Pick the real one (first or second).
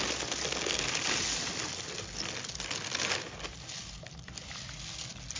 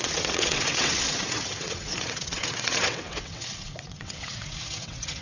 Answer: first